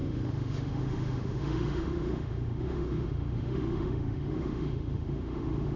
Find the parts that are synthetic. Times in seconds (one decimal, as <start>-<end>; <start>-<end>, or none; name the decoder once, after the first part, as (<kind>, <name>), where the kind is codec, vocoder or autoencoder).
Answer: 0.0-5.8 (autoencoder, DAC-VAE)